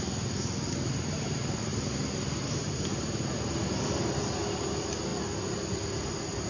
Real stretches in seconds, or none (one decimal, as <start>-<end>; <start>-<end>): 0.0-6.5